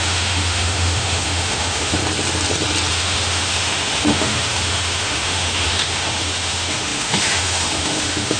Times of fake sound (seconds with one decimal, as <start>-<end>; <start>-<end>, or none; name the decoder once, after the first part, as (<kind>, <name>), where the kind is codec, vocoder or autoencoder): 0.0-2.0 (autoencoder, DAC-VAE); 2.9-8.4